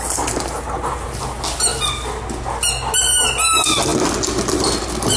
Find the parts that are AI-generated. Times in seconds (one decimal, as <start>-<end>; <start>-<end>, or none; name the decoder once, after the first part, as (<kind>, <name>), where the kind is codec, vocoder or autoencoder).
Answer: none